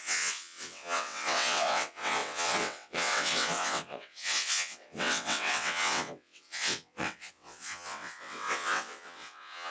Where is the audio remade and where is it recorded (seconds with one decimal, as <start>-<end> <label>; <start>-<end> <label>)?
0.0-9.7 remade